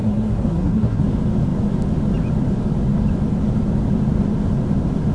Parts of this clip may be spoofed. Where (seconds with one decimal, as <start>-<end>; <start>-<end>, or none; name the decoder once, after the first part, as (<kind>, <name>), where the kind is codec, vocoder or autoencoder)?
0.0-1.0 (codec, SNAC)